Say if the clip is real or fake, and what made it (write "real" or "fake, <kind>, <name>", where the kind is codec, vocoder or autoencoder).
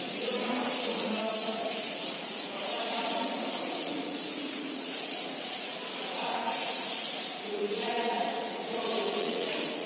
fake, vocoder, Vocos